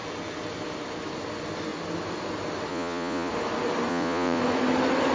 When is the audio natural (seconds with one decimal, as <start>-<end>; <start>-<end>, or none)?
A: 0.0-2.7; 3.3-3.9; 4.4-5.1